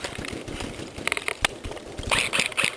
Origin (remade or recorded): remade